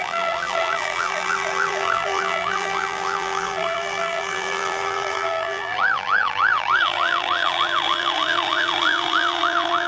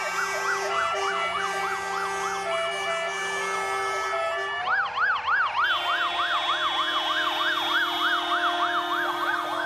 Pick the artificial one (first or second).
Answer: first